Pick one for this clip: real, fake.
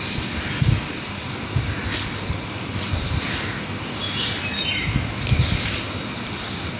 real